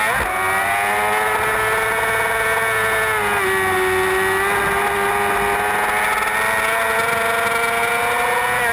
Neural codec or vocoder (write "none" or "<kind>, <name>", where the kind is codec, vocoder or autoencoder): none